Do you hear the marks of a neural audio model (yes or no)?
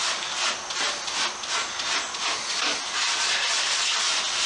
no